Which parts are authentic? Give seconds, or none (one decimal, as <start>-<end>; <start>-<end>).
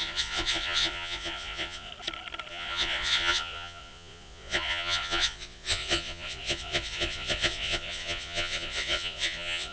1.9-2.5